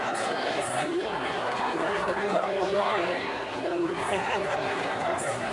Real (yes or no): no